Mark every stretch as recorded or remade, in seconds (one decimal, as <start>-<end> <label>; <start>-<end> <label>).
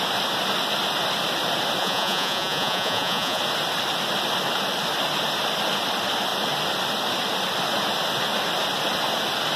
0.0-1.8 recorded; 1.8-3.4 remade; 3.4-9.6 recorded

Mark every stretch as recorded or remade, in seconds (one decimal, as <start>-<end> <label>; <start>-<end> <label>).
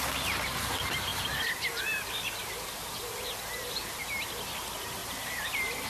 0.0-5.0 recorded; 5.0-5.9 remade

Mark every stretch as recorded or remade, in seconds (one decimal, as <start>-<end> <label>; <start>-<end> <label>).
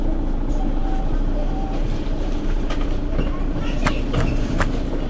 0.0-0.8 recorded; 0.8-3.9 remade; 3.9-5.1 recorded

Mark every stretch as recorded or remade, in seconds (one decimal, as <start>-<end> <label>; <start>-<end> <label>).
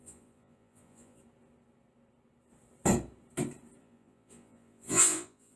0.0-1.2 remade; 1.2-3.8 recorded; 3.8-5.6 remade